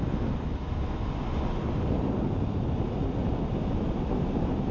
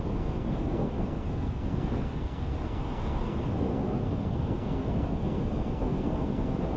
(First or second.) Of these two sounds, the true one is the first